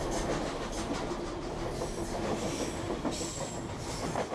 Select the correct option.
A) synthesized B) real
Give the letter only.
B